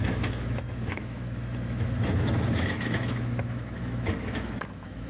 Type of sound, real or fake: fake